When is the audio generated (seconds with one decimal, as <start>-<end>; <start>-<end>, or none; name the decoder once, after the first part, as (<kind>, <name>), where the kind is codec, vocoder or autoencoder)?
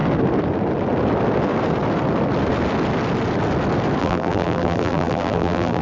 4.0-5.8 (vocoder, BigVGAN v2)